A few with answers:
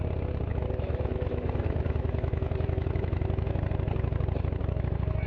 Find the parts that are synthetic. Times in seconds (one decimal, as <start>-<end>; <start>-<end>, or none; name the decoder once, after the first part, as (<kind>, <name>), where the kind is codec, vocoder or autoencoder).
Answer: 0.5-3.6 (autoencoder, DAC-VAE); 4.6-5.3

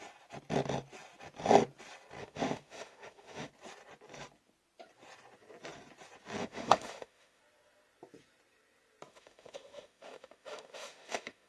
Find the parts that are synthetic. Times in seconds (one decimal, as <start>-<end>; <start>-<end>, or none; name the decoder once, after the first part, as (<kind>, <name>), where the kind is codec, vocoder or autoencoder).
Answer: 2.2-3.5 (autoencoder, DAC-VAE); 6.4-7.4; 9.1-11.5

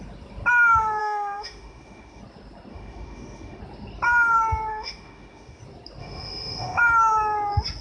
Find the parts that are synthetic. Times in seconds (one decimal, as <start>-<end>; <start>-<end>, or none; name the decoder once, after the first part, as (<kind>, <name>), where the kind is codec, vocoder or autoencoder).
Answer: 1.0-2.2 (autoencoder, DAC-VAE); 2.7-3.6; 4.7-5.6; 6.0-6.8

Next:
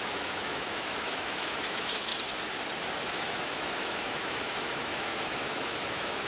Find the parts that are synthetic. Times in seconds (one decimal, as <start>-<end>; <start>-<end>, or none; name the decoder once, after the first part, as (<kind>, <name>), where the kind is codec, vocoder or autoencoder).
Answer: 0.0-2.1 (autoencoder, DAC-VAE); 3.0-6.3

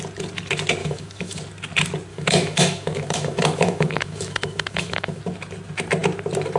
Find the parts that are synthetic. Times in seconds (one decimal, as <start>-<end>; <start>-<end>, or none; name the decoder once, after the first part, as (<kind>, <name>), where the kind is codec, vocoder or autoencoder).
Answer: 0.8-1.4 (autoencoder, DAC-VAE); 2.1-5.2

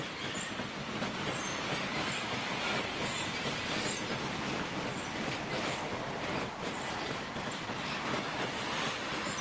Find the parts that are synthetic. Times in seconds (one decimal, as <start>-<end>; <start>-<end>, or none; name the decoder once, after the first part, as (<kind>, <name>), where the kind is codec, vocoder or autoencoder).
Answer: none